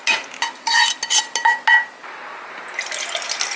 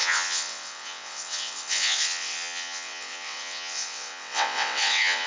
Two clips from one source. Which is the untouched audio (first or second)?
first